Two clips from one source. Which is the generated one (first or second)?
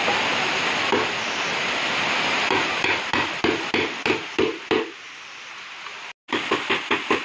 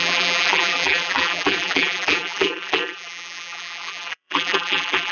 second